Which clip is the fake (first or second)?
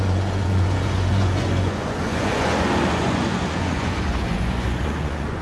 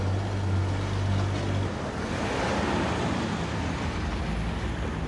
first